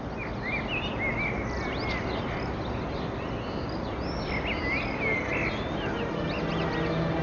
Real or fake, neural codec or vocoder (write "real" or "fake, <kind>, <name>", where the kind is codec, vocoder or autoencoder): real